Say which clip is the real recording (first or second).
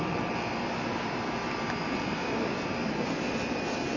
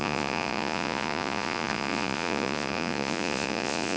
first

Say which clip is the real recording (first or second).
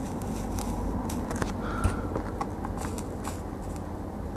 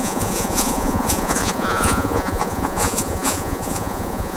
first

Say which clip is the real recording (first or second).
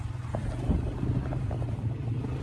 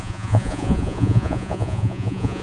first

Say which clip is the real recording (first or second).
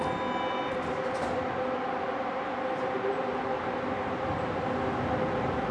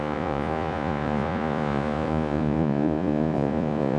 first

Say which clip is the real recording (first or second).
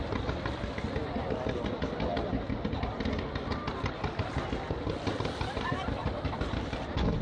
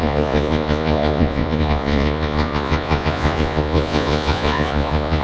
first